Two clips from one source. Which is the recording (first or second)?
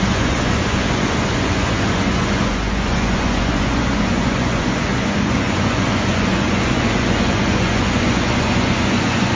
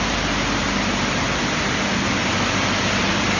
second